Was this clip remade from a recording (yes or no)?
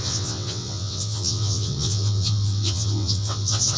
yes